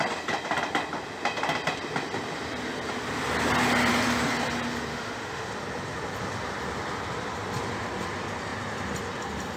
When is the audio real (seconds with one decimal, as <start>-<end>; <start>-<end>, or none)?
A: 0.0-4.9; 5.5-9.6